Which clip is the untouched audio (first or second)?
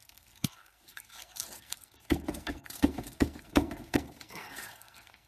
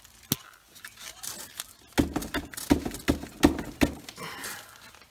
second